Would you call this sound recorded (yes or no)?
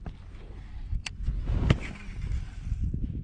yes